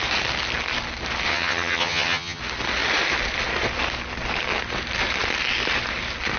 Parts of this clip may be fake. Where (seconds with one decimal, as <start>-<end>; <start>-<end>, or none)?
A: 1.3-2.4

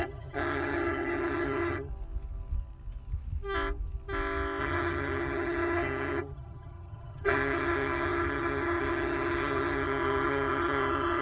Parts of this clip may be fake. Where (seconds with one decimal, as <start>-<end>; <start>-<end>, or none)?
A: 0.0-1.9; 4.6-11.2

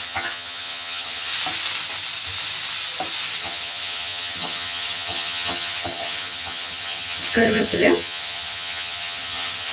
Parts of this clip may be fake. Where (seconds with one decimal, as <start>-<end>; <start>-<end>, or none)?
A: 0.0-1.3; 3.4-9.7

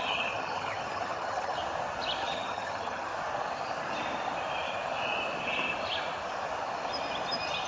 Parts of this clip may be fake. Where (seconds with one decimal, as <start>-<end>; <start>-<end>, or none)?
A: 0.0-1.6; 2.2-3.1

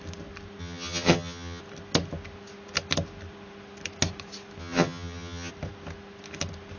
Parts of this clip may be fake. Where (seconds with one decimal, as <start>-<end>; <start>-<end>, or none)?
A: 0.6-1.6; 4.6-5.5